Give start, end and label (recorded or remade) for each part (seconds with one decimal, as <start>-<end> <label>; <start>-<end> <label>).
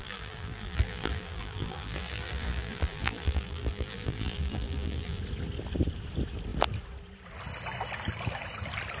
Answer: 0.0-5.2 remade; 5.2-9.0 recorded